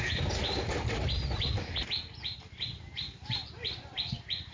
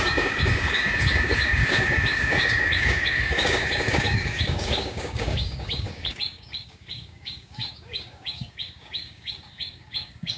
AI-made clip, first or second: second